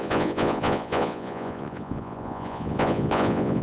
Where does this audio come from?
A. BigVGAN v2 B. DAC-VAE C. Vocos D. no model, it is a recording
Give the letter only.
C